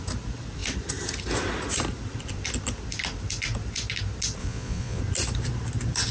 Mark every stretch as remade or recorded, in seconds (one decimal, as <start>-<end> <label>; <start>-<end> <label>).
0.0-4.4 recorded; 4.4-5.0 remade; 5.0-6.1 recorded